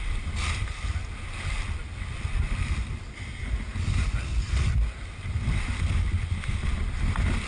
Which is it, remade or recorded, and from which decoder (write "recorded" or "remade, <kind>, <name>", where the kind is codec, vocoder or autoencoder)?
recorded